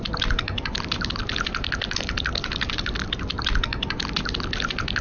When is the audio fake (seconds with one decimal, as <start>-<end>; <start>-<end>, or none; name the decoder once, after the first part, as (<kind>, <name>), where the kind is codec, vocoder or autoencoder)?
none